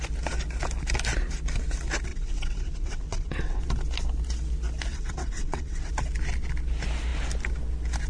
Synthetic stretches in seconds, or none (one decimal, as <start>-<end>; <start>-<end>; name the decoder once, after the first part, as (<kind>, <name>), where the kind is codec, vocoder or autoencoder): 2.1-3.6 (vocoder, WaveNeXt); 4.9-5.9